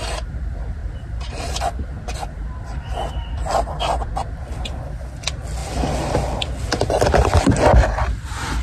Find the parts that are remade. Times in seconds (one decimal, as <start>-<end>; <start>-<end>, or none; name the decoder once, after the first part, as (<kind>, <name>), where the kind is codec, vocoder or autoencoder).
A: 0.8-1.4 (vocoder, BigVGAN v2)